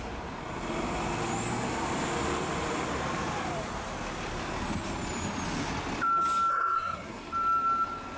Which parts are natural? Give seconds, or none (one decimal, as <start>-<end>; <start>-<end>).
0.0-6.5; 7.3-8.2